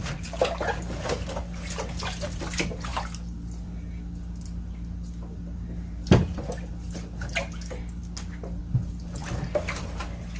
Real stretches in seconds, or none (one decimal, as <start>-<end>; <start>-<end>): 0.8-10.4